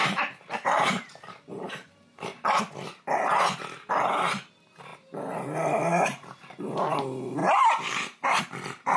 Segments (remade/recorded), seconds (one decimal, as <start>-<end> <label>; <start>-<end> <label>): 0.0-2.6 remade; 2.6-7.4 recorded; 7.4-8.4 remade; 8.4-9.0 recorded